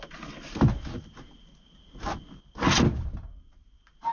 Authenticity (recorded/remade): recorded